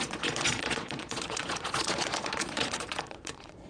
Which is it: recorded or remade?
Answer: remade